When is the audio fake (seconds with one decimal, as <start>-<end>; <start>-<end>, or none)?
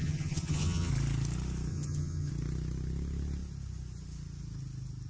0.0-0.9; 1.7-2.3